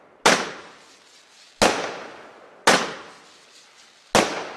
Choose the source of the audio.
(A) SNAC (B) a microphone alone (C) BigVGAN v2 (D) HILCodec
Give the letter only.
B